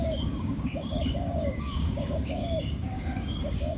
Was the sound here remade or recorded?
remade